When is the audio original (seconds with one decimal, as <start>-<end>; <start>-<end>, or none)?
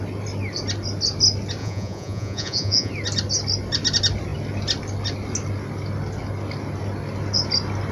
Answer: 0.0-1.6; 2.9-7.9